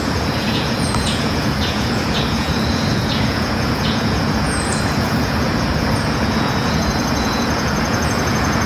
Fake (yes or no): yes